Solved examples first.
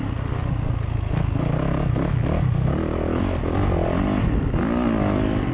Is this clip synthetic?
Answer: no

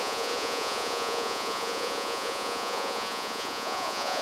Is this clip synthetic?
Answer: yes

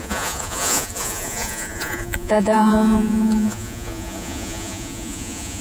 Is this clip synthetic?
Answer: yes